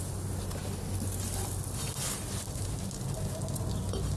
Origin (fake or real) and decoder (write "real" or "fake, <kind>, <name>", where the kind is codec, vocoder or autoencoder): real